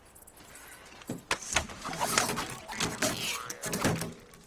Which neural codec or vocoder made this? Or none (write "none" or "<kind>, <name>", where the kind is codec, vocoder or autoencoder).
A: none